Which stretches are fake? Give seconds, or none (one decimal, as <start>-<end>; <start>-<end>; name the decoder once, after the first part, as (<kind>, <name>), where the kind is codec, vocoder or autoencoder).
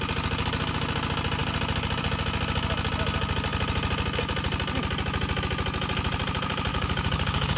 6.7-7.6 (codec, DAC)